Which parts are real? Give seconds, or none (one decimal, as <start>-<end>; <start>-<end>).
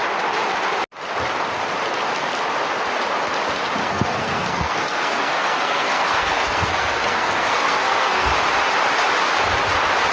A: 0.0-3.8; 8.3-10.1